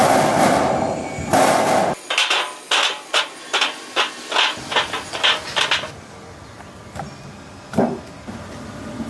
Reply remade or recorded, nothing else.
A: recorded